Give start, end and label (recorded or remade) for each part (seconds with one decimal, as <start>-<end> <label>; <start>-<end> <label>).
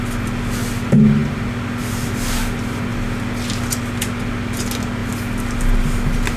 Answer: 0.0-6.4 recorded